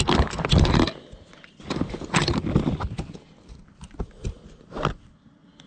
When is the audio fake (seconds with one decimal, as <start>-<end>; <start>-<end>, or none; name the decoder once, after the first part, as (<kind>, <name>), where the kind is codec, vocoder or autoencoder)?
none